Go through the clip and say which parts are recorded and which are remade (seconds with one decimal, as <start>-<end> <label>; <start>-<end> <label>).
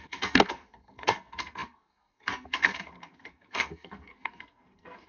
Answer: 0.0-5.1 remade